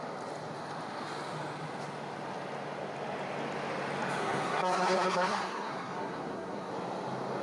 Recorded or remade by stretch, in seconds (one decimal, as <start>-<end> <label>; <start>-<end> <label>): 0.0-4.2 recorded; 4.2-6.7 remade; 6.7-7.4 recorded